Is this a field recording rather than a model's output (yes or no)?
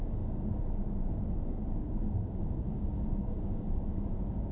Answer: no